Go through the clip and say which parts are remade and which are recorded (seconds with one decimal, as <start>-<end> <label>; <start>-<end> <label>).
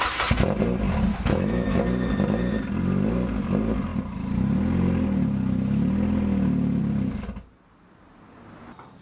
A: 0.0-1.1 recorded; 1.1-1.8 remade; 1.8-9.0 recorded